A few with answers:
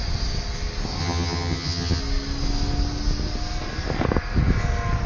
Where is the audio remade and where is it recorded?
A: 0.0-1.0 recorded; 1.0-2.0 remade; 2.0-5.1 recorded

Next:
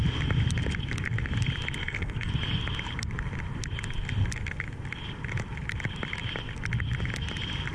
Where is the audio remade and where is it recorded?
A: 0.0-1.8 recorded; 1.8-2.3 remade; 2.3-7.7 recorded

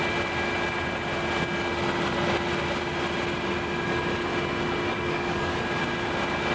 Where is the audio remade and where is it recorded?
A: 0.0-4.9 recorded; 4.9-5.6 remade; 5.6-6.5 recorded